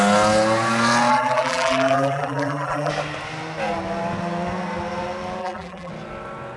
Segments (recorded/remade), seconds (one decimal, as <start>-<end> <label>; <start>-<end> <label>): 0.0-1.1 recorded; 1.1-2.9 remade; 2.9-5.4 recorded; 5.4-5.9 remade; 5.9-6.6 recorded